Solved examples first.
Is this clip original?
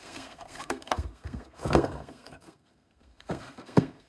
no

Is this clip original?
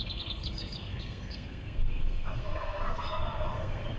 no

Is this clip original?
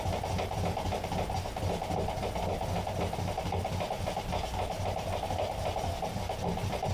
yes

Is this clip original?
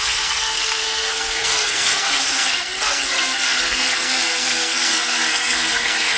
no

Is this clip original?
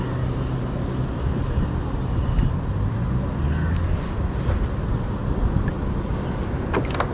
yes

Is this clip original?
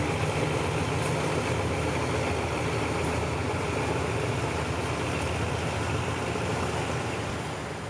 yes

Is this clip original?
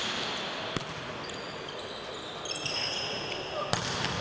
yes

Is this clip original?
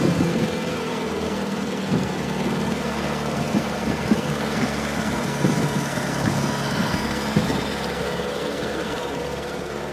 no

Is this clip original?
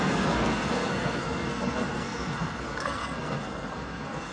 no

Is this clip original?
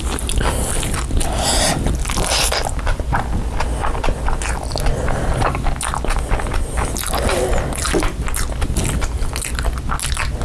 yes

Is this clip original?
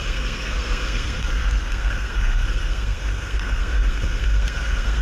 no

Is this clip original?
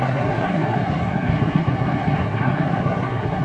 no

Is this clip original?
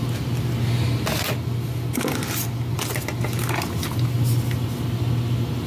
yes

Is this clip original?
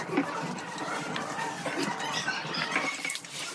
yes